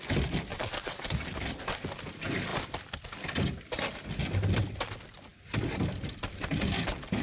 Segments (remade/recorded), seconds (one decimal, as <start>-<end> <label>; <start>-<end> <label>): 0.0-0.5 recorded; 0.5-1.0 remade; 1.0-7.2 recorded

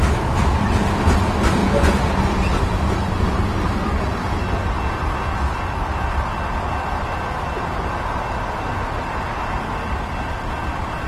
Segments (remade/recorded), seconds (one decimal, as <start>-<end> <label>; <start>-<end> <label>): 0.0-1.6 recorded; 1.6-2.2 remade; 2.2-11.1 recorded

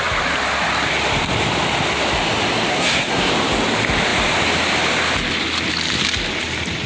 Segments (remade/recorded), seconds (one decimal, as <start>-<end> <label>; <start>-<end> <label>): 0.0-2.7 recorded; 2.7-3.3 remade; 3.3-6.9 recorded

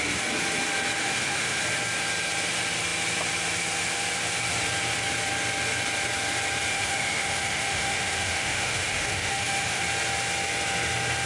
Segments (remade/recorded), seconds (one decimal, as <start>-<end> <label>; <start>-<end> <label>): 0.0-1.0 recorded; 1.0-1.6 remade; 1.6-6.7 recorded; 6.7-9.8 remade; 9.8-11.3 recorded

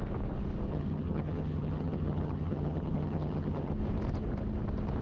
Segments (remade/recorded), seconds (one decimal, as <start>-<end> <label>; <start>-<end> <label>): 0.0-0.7 recorded; 0.7-3.7 remade; 3.7-5.0 recorded

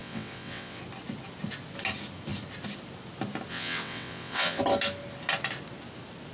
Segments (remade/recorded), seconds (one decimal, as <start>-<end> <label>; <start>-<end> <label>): 0.0-0.8 remade; 0.8-3.5 recorded; 3.5-4.6 remade; 4.6-6.3 recorded

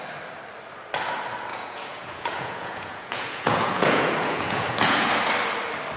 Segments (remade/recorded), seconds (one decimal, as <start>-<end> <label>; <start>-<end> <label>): 0.0-1.5 recorded; 1.5-5.1 remade; 5.1-6.0 recorded